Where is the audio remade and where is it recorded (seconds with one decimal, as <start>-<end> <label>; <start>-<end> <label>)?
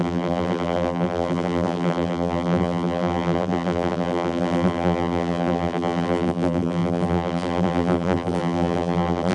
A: 0.0-9.3 remade